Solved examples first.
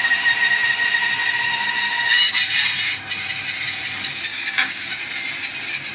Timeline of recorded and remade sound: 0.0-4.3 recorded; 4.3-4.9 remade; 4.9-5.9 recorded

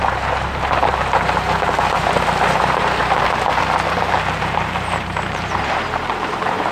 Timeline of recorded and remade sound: 0.0-3.0 remade; 3.0-4.4 recorded; 4.4-6.7 remade

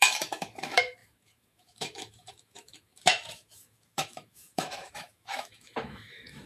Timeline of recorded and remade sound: 0.0-6.5 remade